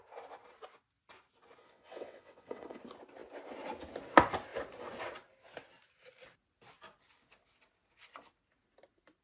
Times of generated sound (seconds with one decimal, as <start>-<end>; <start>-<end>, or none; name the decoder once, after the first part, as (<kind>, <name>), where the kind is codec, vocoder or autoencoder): 1.6-2.8 (vocoder, WaveNeXt)